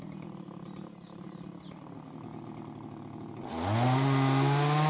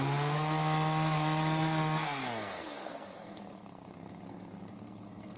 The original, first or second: first